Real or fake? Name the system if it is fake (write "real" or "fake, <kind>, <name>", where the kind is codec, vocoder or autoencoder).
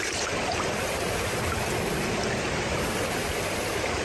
real